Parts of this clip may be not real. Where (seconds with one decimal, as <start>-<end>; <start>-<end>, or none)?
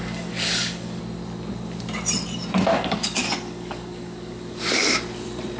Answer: 0.0-1.0; 2.7-4.6